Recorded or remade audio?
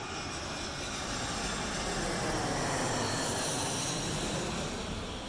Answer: recorded